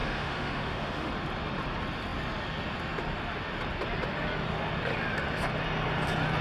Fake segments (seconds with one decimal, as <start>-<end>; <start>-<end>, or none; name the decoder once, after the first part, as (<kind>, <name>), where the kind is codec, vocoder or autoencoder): 0.0-1.1 (autoencoder, DAC-VAE)